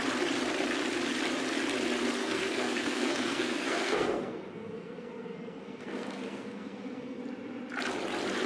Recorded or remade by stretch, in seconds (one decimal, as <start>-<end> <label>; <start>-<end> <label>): 0.0-2.2 recorded; 2.2-7.2 remade; 7.2-8.5 recorded

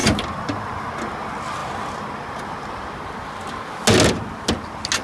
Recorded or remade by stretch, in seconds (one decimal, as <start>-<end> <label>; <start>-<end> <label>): 0.0-5.0 recorded

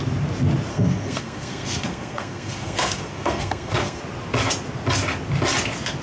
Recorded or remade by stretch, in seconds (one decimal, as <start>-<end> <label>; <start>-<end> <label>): 0.0-0.7 recorded; 0.7-4.0 remade; 4.0-6.0 recorded

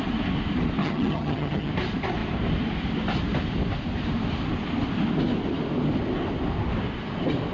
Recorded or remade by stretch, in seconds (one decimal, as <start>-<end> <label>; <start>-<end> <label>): 0.0-0.8 recorded; 0.8-1.7 remade; 1.7-7.5 recorded

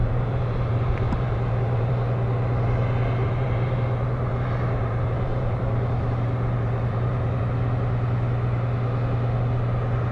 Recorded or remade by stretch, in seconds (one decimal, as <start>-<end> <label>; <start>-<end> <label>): 0.0-1.9 remade; 1.9-3.2 recorded; 3.2-7.4 remade; 7.4-10.1 recorded